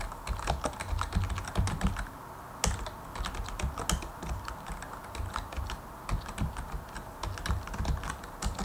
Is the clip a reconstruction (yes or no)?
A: no